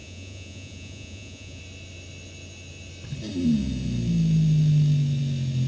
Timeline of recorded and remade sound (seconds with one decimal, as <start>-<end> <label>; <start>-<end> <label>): 0.0-1.6 remade; 1.6-5.7 recorded